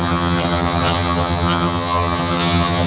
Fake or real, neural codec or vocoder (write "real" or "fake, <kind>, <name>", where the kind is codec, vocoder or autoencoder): fake, vocoder, HiFi-GAN